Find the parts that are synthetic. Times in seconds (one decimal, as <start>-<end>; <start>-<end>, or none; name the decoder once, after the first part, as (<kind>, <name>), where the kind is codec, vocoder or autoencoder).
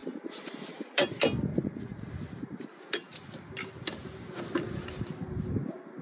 1.5-2.1 (vocoder, Vocos)